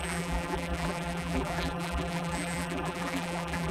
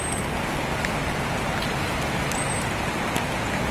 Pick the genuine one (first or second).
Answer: second